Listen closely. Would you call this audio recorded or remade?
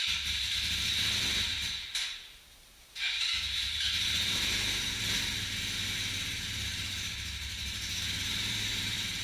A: remade